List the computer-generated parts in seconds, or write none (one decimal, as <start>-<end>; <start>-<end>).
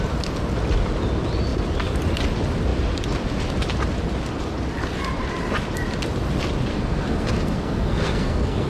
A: 6.7-8.7